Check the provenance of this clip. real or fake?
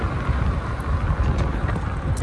real